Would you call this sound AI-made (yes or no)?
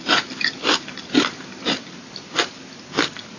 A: no